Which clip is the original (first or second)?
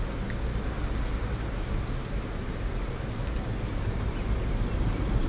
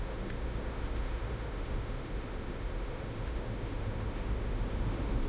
first